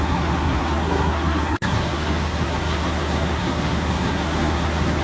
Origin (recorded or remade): remade